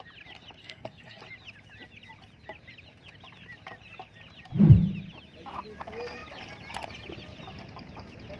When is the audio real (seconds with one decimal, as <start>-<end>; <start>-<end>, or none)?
0.0-0.6; 1.2-8.4